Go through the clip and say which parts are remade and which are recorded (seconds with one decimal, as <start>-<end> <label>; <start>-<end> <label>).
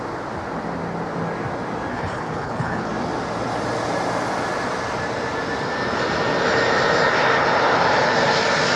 0.0-1.9 recorded; 1.9-2.9 remade; 2.9-8.8 recorded